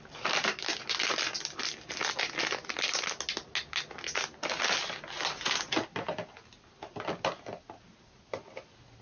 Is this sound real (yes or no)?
yes